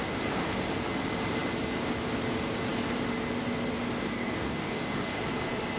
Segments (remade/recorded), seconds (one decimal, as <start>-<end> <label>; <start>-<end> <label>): 0.0-4.1 recorded; 4.1-5.2 remade; 5.2-5.8 recorded